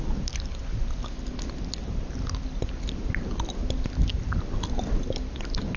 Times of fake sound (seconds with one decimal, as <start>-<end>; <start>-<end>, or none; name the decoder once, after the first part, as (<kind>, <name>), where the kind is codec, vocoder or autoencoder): none